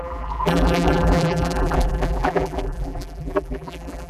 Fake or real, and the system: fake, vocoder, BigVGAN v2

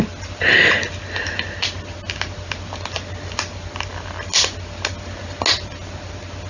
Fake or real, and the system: real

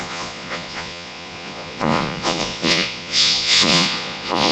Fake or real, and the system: fake, vocoder, Vocos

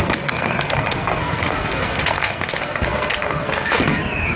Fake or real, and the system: fake, codec, SNAC